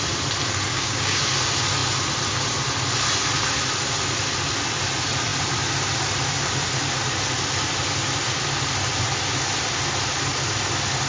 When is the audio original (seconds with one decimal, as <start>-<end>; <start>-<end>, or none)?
0.0-0.7; 1.2-11.1